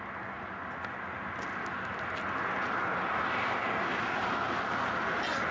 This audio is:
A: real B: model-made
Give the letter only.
A